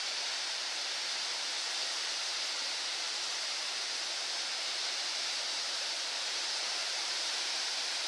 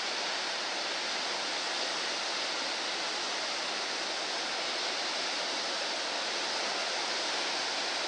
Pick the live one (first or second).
second